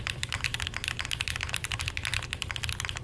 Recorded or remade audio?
recorded